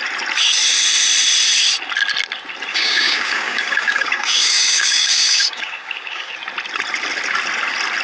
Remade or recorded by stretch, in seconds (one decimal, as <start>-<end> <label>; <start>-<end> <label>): 0.0-2.7 recorded; 2.7-6.3 remade; 6.3-8.0 recorded